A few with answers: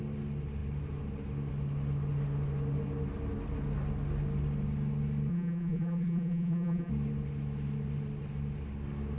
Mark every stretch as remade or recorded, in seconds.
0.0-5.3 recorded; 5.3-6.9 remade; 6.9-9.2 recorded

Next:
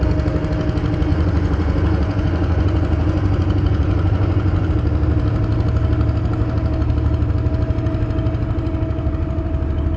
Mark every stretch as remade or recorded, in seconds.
0.0-1.1 recorded; 1.1-4.7 remade; 4.7-10.0 recorded